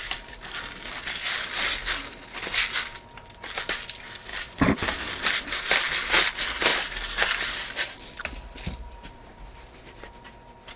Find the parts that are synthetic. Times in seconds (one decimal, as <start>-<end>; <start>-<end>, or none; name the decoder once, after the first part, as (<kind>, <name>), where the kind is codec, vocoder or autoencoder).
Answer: 4.3-6.1 (vocoder, BigVGAN v2)